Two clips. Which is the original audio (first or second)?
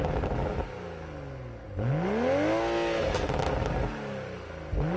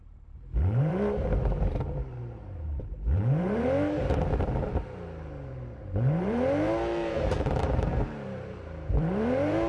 first